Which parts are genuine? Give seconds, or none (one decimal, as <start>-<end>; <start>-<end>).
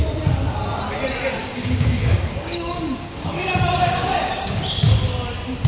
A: 0.0-1.4; 4.8-5.7